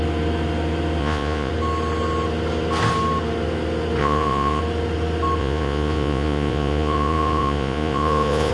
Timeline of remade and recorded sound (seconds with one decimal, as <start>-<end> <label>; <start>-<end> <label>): 0.0-1.0 recorded; 1.0-1.5 remade; 1.5-4.0 recorded; 4.0-4.6 remade; 4.6-5.4 recorded; 5.4-8.5 remade

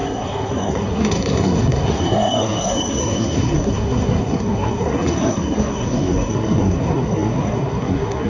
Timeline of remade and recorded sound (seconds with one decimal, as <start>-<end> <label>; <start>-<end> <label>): 0.0-8.3 remade

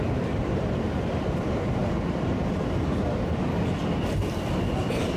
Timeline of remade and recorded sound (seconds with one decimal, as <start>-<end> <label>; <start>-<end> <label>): 0.0-5.2 recorded

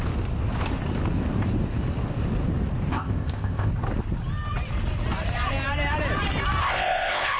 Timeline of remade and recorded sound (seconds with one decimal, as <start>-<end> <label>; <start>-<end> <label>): 0.0-2.9 recorded; 2.9-3.7 remade; 3.7-6.6 recorded; 6.6-7.4 remade

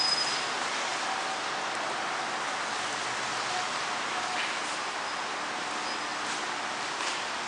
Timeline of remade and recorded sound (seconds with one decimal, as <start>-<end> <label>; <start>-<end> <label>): 0.0-7.5 recorded